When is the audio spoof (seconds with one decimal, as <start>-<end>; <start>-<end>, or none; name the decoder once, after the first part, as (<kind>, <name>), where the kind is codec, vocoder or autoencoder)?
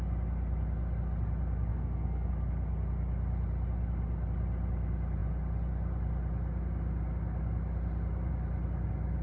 1.7-2.3 (codec, SNAC)